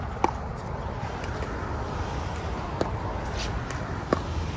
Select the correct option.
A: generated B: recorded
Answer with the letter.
B